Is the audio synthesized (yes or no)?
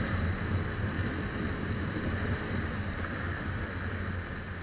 no